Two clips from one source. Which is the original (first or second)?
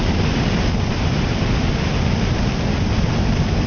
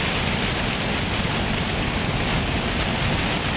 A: first